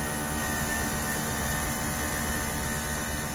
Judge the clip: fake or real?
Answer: real